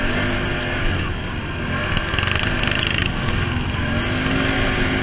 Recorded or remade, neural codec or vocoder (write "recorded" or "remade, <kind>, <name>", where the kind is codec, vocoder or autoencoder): recorded